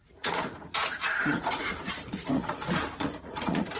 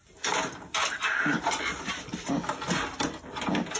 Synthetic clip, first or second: first